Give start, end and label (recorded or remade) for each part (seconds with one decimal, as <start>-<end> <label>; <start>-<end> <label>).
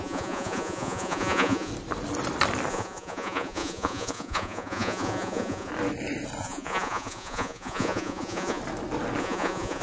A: 0.0-1.7 remade; 1.7-2.7 recorded; 2.7-5.7 remade; 5.7-6.4 recorded; 6.4-8.6 remade; 8.6-9.2 recorded; 9.2-9.8 remade